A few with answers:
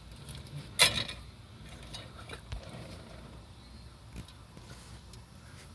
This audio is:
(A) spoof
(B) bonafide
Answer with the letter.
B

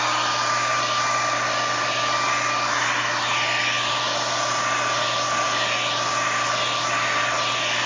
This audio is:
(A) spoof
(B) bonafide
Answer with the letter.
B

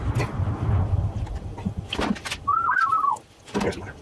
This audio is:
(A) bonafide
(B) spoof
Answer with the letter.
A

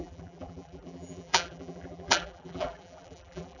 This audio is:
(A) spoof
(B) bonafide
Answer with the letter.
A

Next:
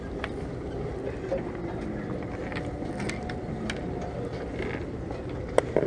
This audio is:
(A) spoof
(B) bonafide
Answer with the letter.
B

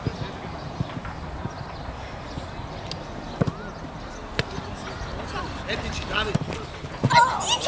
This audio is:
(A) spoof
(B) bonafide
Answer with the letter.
B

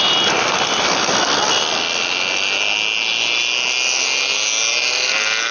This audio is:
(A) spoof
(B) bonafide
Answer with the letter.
B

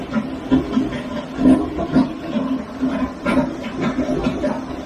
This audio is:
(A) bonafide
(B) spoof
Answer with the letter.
A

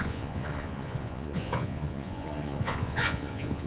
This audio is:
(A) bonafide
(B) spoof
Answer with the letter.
B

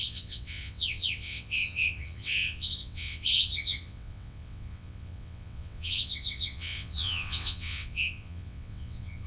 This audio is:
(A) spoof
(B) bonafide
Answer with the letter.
A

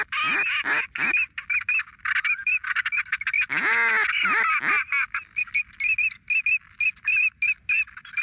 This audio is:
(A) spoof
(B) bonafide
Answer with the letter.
B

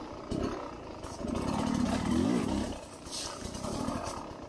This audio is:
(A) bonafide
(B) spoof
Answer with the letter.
A